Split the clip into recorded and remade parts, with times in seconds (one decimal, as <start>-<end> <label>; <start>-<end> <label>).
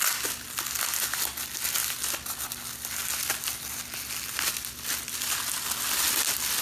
0.0-6.6 recorded